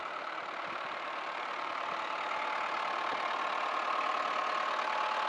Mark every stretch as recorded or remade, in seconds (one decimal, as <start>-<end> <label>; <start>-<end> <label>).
0.0-2.3 remade; 2.3-5.3 recorded